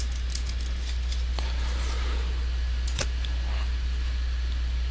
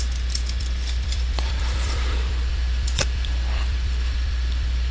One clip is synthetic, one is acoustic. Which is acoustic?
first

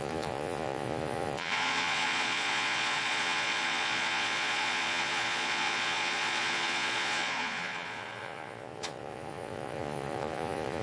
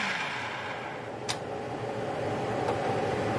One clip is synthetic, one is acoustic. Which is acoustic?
second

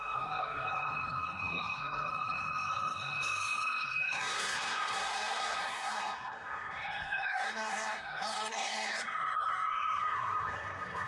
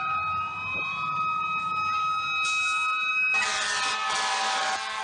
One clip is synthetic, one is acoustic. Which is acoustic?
second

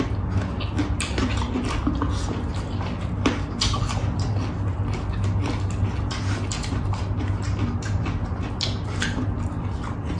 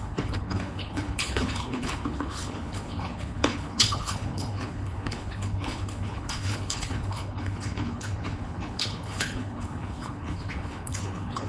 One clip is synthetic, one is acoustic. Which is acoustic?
first